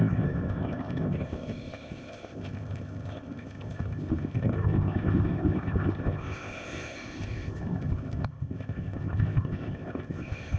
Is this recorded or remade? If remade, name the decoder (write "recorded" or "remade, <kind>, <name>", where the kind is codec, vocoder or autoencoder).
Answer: remade, codec, ZipCodec